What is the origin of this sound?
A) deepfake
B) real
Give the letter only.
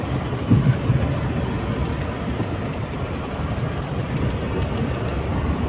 B